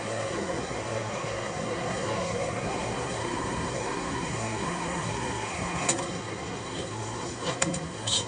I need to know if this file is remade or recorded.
remade